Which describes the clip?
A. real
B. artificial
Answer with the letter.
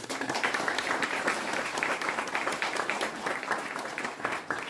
B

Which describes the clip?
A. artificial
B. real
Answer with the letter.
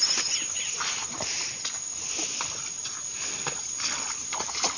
B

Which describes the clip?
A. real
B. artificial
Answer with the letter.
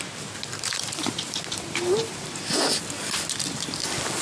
A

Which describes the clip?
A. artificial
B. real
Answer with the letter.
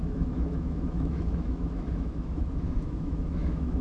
A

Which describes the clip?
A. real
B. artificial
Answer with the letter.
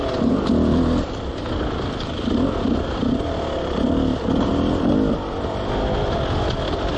A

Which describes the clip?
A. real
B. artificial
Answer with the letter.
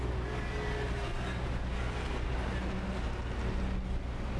A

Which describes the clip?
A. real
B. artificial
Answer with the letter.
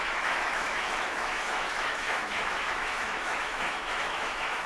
B